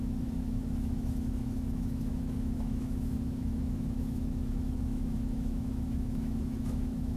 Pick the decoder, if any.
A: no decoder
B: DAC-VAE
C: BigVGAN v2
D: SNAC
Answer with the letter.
B